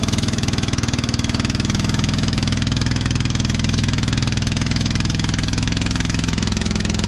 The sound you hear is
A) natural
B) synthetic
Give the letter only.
B